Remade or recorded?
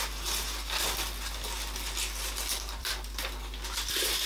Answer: remade